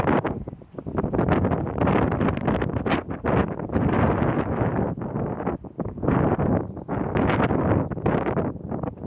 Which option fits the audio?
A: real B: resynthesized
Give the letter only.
A